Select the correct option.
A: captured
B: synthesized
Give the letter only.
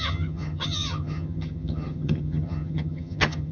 B